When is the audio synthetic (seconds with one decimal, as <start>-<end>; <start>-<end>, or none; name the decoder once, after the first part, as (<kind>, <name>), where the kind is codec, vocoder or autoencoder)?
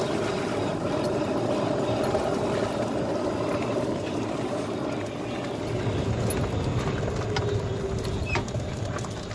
none